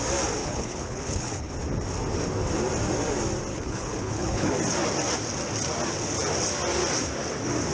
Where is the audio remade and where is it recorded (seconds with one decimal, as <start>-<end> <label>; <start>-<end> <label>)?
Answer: 0.0-0.4 recorded; 0.4-1.5 remade; 1.5-3.5 recorded; 3.5-4.5 remade; 4.5-7.7 recorded